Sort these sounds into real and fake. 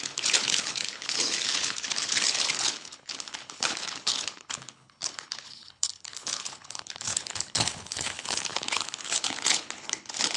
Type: fake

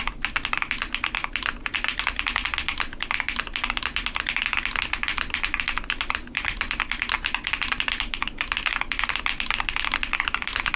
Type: real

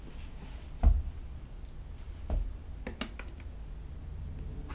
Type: real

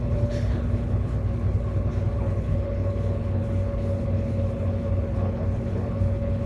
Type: fake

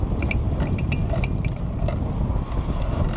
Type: real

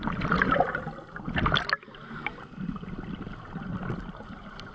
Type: real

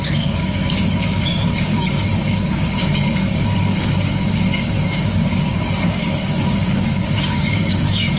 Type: fake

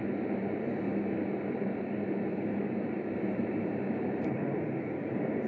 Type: fake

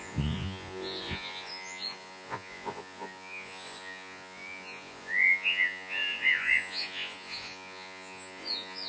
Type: fake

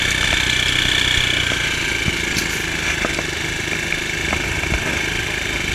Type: real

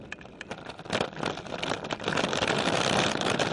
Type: fake